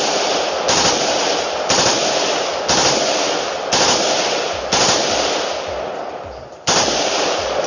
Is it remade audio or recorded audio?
recorded